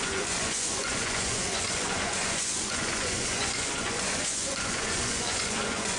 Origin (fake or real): fake